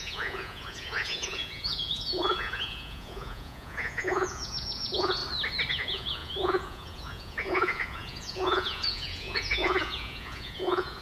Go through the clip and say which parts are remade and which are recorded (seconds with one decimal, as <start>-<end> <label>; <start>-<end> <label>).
0.0-5.2 remade; 5.2-5.7 recorded; 5.7-11.0 remade